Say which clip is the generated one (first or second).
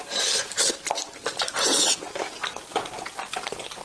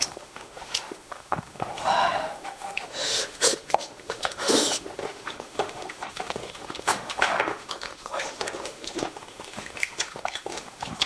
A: second